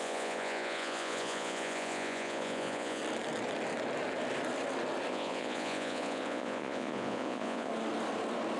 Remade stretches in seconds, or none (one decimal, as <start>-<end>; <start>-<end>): 0.0-3.0; 5.1-7.7